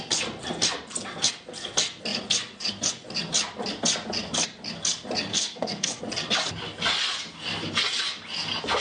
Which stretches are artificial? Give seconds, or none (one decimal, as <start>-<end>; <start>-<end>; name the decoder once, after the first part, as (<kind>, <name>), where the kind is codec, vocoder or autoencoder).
5.3-6.0 (codec, SNAC)